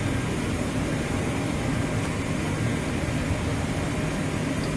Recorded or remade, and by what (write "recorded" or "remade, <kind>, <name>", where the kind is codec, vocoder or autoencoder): recorded